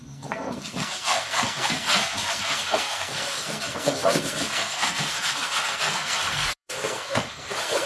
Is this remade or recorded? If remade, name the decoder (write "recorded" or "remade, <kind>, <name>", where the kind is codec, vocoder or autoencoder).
remade, codec, SNAC